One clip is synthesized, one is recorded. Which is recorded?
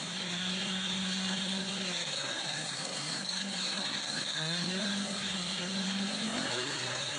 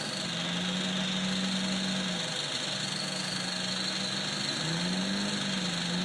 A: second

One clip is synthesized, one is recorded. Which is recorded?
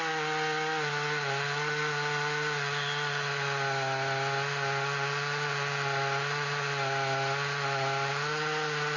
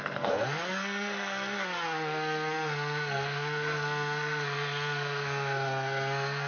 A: first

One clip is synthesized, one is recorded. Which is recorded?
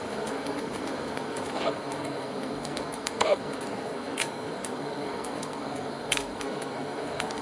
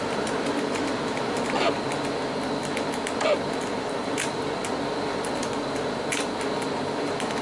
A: second